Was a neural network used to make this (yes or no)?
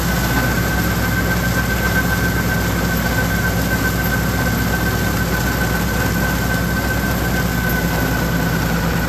no